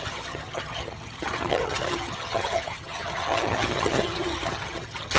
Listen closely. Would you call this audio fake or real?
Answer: fake